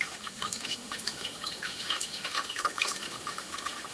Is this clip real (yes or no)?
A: no